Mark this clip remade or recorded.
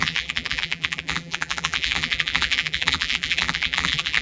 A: remade